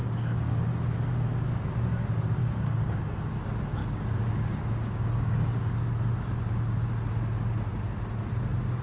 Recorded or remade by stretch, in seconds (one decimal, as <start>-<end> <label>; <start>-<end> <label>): 0.0-0.7 remade; 0.7-2.4 recorded; 2.4-3.4 remade; 3.4-3.8 recorded; 3.8-5.7 remade; 5.7-8.8 recorded